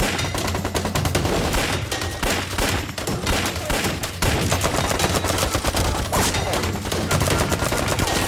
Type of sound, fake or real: real